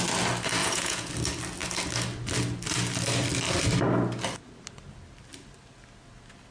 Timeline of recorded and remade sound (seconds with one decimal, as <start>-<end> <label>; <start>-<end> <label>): 0.0-0.6 recorded; 0.6-1.1 remade; 1.1-6.5 recorded